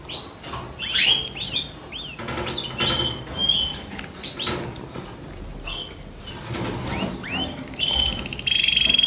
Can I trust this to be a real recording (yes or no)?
yes